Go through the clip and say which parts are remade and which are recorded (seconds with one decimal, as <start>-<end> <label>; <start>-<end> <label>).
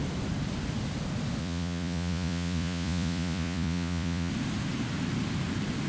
0.0-1.4 recorded; 1.4-4.3 remade; 4.3-5.9 recorded